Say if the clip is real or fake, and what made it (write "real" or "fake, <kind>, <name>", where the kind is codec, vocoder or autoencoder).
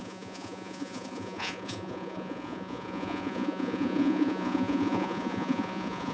fake, vocoder, Vocos